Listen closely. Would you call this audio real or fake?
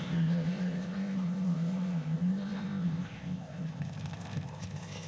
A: fake